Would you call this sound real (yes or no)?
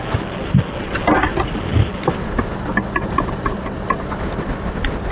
yes